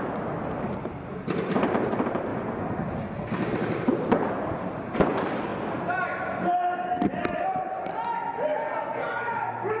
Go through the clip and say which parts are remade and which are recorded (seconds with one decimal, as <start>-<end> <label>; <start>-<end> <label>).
0.0-2.3 remade; 2.3-3.5 recorded; 3.5-5.5 remade; 5.5-9.8 recorded